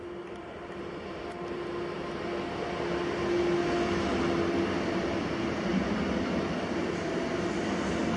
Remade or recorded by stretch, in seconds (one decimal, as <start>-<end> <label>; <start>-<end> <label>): 0.0-8.2 recorded